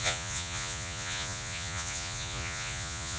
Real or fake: fake